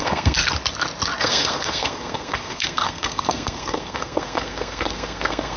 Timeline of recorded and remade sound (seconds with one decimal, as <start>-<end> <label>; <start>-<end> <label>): 0.0-0.4 remade; 0.4-1.2 recorded; 1.2-5.6 remade